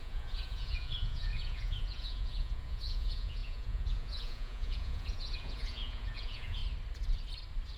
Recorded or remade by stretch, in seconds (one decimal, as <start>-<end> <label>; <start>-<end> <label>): 0.0-6.6 remade; 6.6-7.8 recorded